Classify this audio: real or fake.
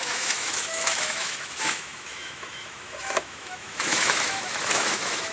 fake